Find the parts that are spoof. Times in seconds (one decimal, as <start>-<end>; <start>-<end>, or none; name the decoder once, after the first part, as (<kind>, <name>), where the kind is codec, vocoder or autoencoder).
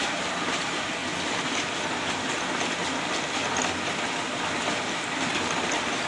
0.0-1.0 (vocoder, BigVGAN v2); 4.7-6.1